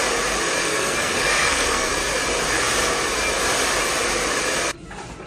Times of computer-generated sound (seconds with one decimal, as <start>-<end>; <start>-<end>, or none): 0.6-1.9